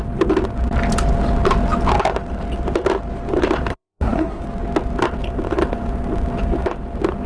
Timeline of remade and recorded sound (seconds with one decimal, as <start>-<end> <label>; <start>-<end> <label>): 0.0-3.7 recorded; 3.7-4.4 remade; 4.4-7.3 recorded